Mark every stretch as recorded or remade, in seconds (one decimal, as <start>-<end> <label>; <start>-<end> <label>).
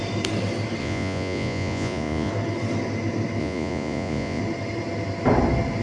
0.0-0.8 recorded; 0.8-2.3 remade; 2.3-3.4 recorded; 3.4-4.4 remade; 4.4-5.8 recorded